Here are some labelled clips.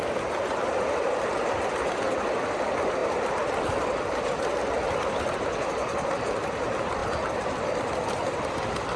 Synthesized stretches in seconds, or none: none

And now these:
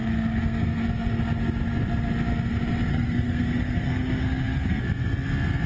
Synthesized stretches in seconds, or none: 0.0-1.2 (codec, SNAC); 2.9-4.8